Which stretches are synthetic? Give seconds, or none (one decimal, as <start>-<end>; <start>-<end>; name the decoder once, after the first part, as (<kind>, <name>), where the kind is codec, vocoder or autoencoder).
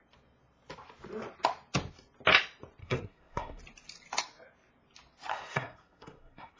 2.8-3.6 (codec, SNAC); 5.3-6.6